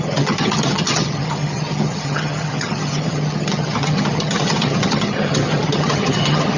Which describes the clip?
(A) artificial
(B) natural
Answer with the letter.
A